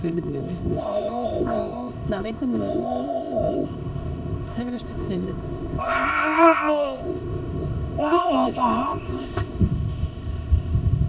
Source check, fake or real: fake